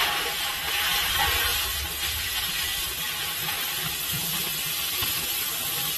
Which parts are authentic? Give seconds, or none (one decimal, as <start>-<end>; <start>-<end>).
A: 0.0-6.0